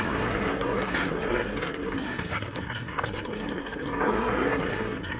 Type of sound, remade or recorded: remade